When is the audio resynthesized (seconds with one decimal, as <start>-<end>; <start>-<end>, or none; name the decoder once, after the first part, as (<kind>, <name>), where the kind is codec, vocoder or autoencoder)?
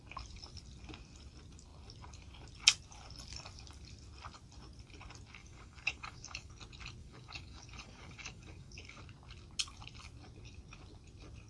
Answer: 5.4-6.5 (codec, DAC); 7.0-9.0